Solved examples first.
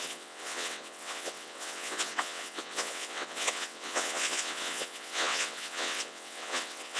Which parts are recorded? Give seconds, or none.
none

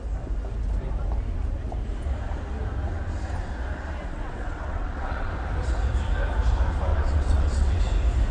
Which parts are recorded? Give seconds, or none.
0.0-4.1; 5.3-6.9; 7.8-8.3

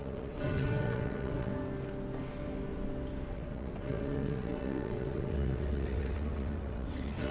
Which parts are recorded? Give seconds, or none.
1.5-3.3

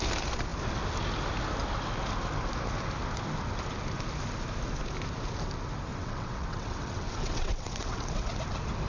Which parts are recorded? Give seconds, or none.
0.0-5.9; 8.4-8.9

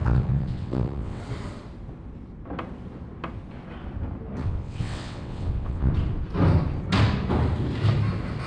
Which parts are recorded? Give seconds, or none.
1.2-4.4; 5.9-8.5

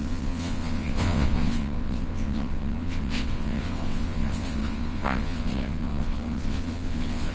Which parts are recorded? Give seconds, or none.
none

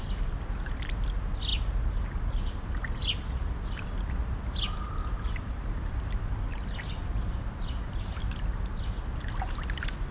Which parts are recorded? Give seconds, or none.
0.0-10.1